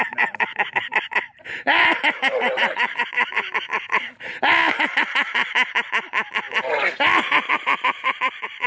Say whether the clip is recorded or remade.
remade